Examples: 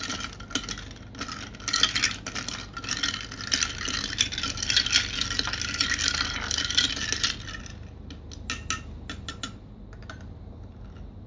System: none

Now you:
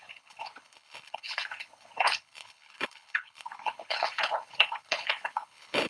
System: codec, HILCodec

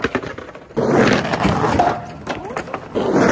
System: none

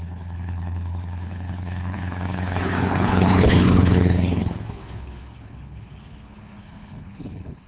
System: codec, HILCodec